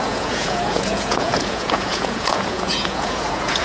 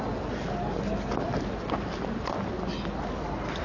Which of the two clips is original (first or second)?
second